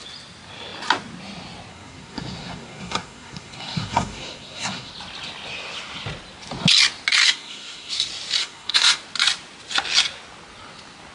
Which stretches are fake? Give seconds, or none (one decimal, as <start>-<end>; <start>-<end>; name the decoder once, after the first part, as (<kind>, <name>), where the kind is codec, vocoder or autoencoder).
1.7-4.9 (codec, SNAC); 7.2-7.9; 8.4-9.0